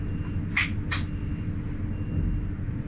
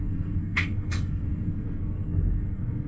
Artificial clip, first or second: second